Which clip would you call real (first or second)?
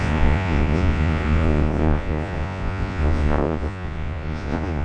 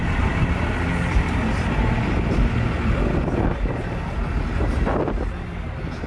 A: second